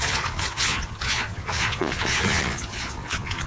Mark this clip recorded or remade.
remade